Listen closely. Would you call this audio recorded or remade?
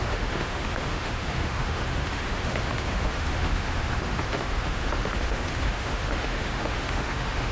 remade